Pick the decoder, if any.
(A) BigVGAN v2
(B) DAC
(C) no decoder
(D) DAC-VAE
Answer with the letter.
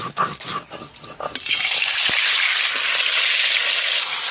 C